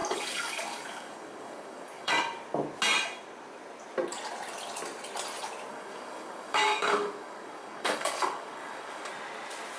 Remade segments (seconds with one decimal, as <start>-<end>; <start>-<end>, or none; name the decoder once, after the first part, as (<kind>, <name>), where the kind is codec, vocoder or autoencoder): 0.0-2.2 (codec, DAC); 5.7-9.1